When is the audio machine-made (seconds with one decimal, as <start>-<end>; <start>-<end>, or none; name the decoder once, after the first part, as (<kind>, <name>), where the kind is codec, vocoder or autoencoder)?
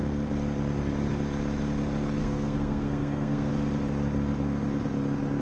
2.2-3.5 (codec, SNAC)